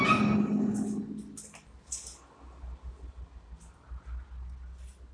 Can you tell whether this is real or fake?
real